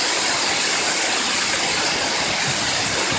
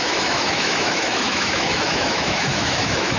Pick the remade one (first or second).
second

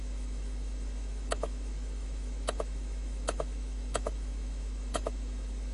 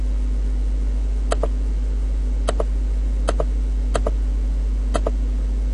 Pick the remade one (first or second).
first